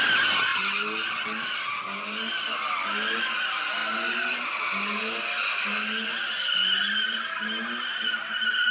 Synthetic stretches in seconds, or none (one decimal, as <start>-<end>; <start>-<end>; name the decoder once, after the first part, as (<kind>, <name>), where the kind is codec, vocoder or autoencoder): none